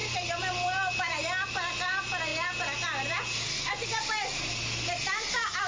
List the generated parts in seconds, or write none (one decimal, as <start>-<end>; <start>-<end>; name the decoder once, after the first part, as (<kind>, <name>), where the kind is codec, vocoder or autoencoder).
none